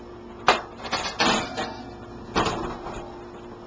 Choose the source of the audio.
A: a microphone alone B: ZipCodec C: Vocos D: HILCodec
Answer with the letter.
A